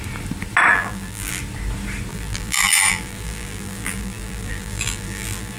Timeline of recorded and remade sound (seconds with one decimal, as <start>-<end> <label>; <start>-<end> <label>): 0.0-0.7 recorded; 0.7-1.4 remade; 1.4-2.1 recorded; 2.1-5.6 remade